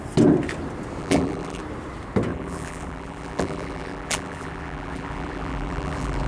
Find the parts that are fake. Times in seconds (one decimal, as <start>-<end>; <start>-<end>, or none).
1.0-1.6; 2.3-6.3